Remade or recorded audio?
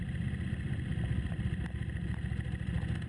recorded